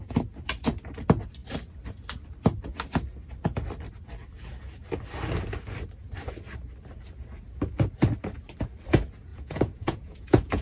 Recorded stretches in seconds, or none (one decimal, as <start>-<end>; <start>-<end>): 0.0-9.3